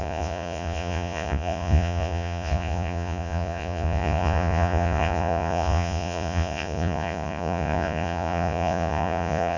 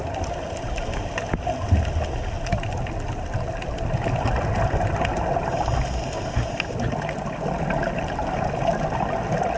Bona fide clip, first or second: second